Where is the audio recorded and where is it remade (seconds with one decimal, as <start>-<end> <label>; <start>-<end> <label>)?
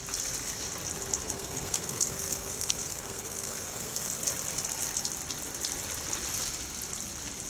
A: 0.0-1.2 recorded; 1.2-4.1 remade; 4.1-7.5 recorded